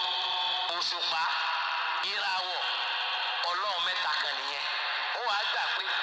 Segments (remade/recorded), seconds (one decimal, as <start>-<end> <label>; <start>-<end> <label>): 0.0-1.3 recorded; 1.3-1.9 remade; 1.9-5.0 recorded; 5.0-6.0 remade